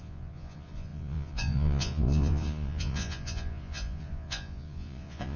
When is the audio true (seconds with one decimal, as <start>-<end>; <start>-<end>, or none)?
none